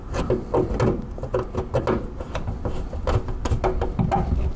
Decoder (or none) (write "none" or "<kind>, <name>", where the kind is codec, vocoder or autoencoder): none